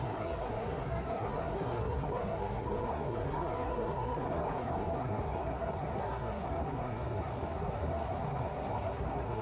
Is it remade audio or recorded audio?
remade